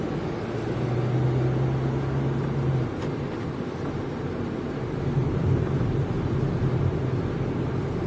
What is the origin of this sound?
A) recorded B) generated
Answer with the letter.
A